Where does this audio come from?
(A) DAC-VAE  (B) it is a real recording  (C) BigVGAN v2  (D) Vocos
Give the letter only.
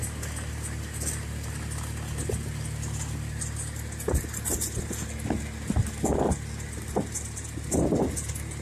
B